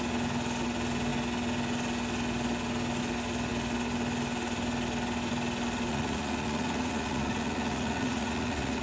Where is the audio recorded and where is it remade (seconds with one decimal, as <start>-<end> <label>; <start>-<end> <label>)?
0.0-5.9 recorded; 5.9-8.8 remade